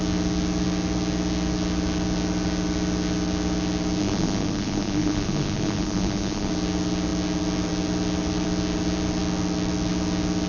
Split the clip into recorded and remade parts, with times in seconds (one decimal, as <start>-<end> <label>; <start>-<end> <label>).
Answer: 0.0-4.0 recorded; 4.0-6.5 remade; 6.5-10.5 recorded